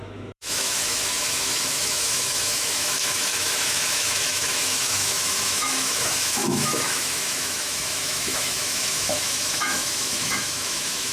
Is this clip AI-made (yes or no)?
yes